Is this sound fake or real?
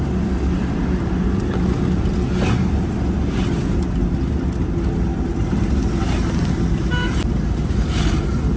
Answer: real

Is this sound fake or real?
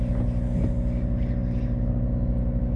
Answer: real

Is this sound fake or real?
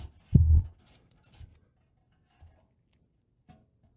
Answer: real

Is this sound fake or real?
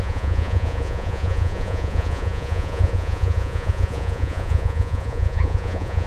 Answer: fake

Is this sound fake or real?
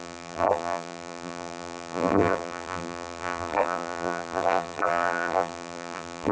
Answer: fake